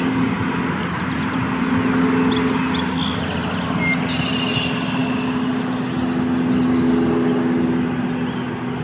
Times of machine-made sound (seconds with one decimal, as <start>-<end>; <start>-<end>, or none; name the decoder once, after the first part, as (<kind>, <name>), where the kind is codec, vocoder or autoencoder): none